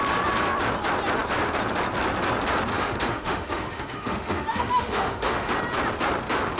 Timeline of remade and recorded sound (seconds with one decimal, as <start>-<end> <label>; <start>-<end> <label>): 0.0-2.7 recorded; 2.7-5.5 remade; 5.5-6.6 recorded